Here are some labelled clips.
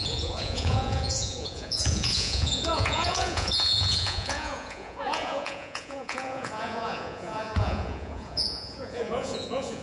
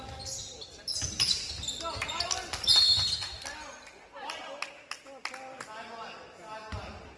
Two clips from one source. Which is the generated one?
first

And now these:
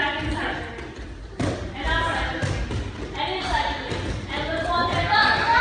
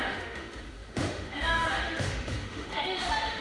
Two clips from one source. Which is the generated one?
second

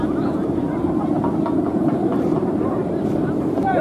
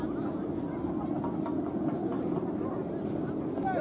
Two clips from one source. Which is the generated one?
first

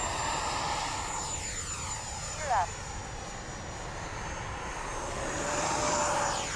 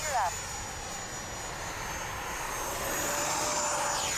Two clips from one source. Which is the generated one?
first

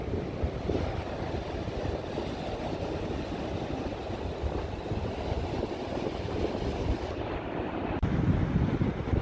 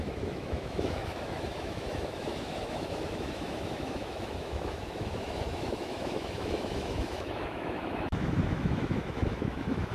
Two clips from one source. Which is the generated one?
second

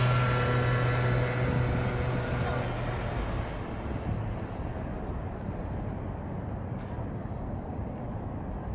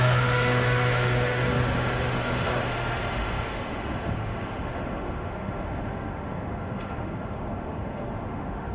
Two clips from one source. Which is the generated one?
second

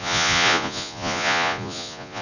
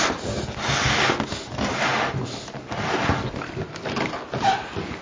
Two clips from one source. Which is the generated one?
first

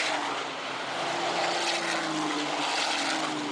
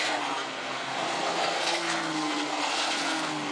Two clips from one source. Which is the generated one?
second